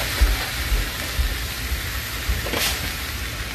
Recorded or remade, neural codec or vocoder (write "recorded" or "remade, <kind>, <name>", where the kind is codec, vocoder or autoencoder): recorded